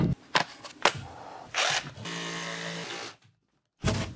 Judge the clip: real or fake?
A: real